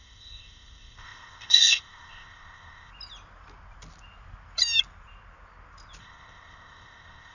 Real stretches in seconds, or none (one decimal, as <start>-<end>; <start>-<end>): 2.9-6.0